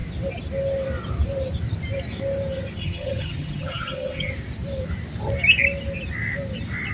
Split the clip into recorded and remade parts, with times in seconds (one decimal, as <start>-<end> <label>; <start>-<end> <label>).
0.0-2.8 recorded; 2.8-4.3 remade; 4.3-6.9 recorded